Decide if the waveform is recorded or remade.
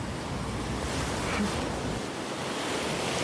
recorded